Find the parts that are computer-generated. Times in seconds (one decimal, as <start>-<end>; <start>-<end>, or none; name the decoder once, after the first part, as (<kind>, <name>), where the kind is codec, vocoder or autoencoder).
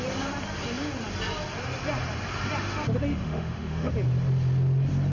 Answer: 3.1-3.9 (autoencoder, DAC-VAE)